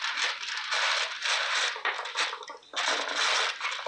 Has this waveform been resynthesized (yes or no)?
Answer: no